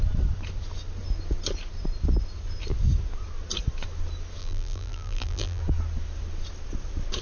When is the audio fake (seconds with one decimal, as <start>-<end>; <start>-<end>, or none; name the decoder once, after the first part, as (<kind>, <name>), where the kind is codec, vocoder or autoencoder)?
4.4-5.6 (vocoder, BigVGAN v2)